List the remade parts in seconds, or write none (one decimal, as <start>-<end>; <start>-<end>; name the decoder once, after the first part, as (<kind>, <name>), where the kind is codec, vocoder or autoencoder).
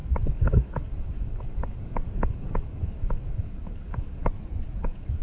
0.0-4.2 (codec, DAC); 4.8-5.2